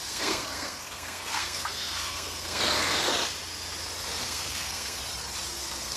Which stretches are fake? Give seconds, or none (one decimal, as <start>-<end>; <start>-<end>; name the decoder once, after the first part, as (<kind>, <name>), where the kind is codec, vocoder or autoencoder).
0.0-3.1 (codec, SNAC); 4.2-5.0; 5.6-6.0